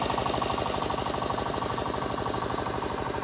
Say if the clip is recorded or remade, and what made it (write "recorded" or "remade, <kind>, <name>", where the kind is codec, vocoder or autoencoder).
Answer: recorded